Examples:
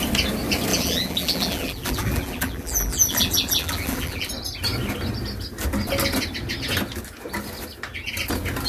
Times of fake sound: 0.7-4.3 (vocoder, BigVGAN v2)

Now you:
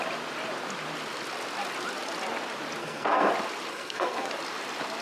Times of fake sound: 2.8-3.3 (codec, SNAC); 3.7-4.3